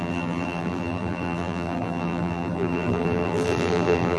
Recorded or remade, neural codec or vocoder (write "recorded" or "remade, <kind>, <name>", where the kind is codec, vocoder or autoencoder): remade, vocoder, BigVGAN v2